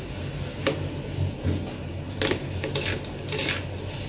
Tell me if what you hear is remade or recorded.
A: recorded